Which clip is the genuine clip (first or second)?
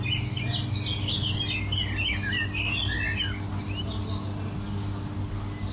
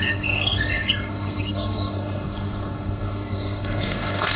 first